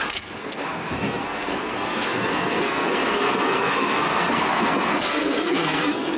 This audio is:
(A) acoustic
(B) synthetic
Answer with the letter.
B